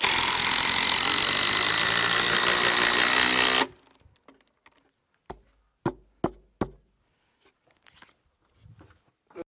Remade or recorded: recorded